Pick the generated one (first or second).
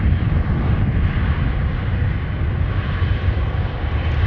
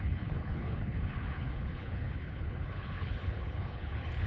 second